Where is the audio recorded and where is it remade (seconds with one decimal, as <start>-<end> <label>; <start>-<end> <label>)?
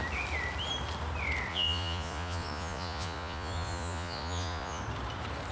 0.0-1.5 recorded; 1.5-4.8 remade; 4.8-5.5 recorded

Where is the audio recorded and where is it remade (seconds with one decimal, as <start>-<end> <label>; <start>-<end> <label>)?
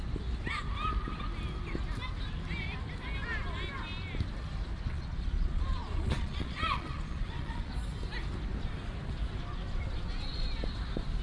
0.0-4.9 recorded; 4.9-7.7 remade; 7.7-11.2 recorded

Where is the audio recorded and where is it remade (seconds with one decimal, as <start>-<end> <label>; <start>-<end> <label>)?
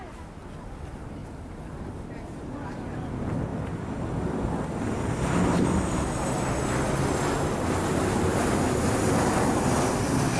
0.0-10.4 recorded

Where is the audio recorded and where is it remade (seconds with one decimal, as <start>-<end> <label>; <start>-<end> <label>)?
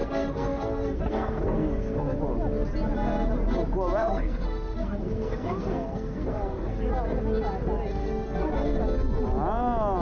0.0-2.2 remade; 2.2-4.0 recorded; 4.0-6.9 remade; 6.9-8.0 recorded; 8.0-8.5 remade; 8.5-10.0 recorded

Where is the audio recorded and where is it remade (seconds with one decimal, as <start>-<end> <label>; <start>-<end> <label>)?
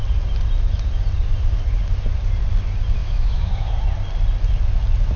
0.0-3.0 recorded; 3.0-3.7 remade; 3.7-5.2 recorded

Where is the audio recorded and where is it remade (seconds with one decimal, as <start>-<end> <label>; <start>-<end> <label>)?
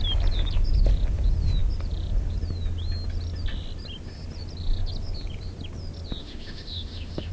0.0-6.2 recorded; 6.2-7.3 remade